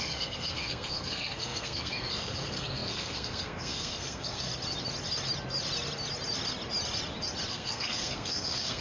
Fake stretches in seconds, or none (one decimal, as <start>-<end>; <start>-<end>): 0.0-4.5; 7.5-8.8